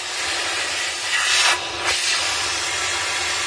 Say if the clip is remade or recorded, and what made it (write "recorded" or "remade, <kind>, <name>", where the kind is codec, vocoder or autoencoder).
recorded